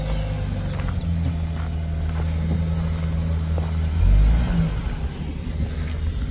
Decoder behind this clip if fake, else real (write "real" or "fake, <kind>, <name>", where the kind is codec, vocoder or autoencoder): real